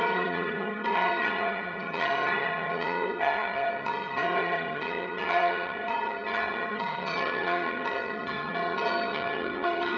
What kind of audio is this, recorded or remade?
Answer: remade